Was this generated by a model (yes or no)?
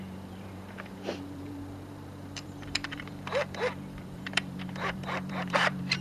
yes